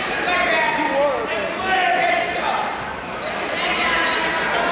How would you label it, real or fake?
real